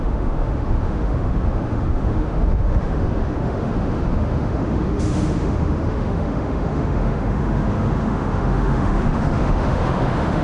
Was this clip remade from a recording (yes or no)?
yes